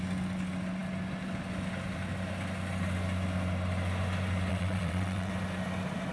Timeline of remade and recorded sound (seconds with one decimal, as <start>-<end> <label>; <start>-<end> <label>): 0.0-4.5 recorded; 4.5-5.3 remade; 5.3-6.1 recorded